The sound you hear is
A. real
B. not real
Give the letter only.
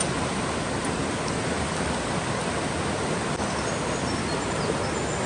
A